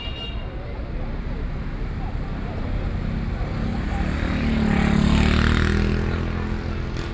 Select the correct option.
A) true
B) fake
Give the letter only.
A